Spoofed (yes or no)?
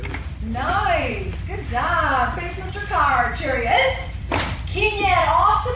yes